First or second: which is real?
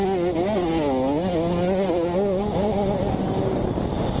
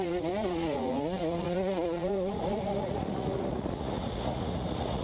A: first